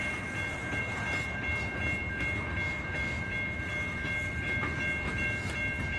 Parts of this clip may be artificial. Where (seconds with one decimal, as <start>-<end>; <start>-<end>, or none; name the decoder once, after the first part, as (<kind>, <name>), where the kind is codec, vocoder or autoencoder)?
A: none